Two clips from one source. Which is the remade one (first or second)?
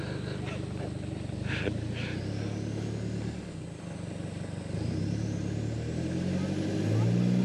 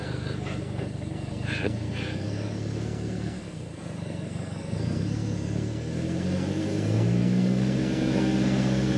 second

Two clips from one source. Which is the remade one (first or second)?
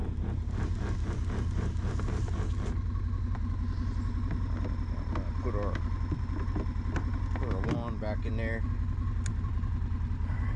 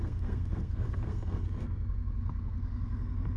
second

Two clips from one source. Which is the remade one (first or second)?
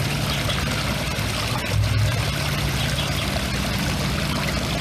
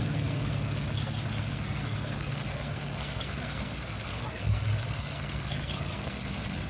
second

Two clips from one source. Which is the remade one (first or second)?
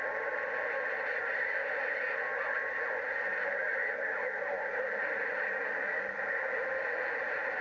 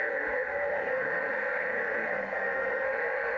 second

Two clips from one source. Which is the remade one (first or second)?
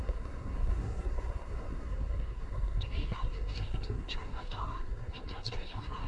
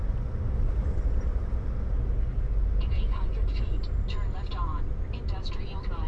first